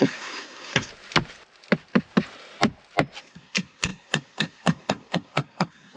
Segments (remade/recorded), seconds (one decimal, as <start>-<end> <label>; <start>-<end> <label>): 0.0-0.9 remade; 0.9-3.2 recorded; 3.2-6.0 remade

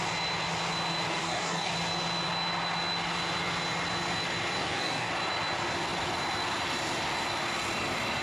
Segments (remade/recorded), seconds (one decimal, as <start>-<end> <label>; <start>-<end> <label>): 0.0-1.1 recorded; 1.1-1.7 remade; 1.7-4.6 recorded; 4.6-5.1 remade; 5.1-8.2 recorded

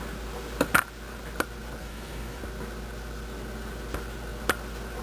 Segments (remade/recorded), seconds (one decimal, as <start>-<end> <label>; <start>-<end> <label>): 0.0-1.8 recorded; 1.8-2.4 remade; 2.4-5.0 recorded

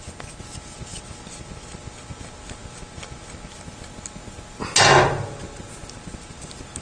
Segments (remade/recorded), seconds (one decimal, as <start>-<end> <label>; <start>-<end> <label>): 0.0-6.8 recorded

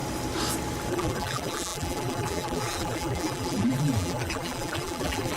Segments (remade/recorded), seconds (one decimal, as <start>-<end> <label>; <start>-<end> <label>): 0.0-0.9 recorded; 0.9-5.4 remade